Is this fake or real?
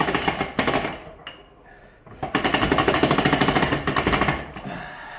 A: real